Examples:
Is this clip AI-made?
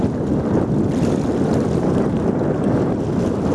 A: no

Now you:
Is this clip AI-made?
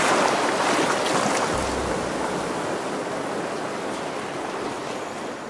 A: no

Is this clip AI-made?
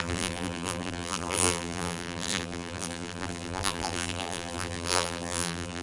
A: yes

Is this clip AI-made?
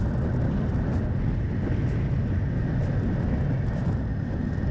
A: no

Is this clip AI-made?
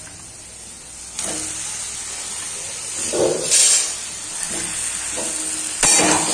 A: no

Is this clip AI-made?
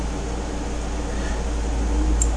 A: no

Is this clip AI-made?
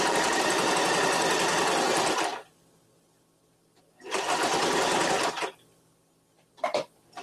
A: no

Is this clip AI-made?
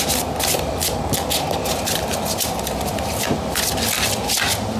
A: no